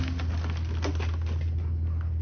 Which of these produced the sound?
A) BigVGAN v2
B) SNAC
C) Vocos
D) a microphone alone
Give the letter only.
D